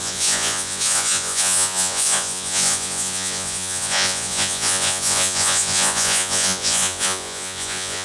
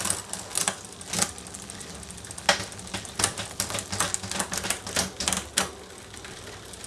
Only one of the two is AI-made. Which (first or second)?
first